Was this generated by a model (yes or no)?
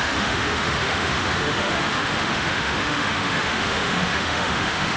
yes